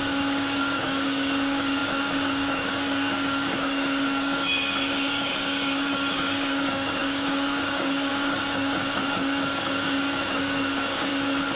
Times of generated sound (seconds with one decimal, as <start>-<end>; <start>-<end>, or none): 0.0-11.1